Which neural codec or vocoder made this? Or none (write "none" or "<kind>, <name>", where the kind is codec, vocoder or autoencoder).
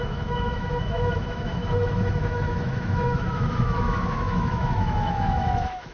autoencoder, DAC-VAE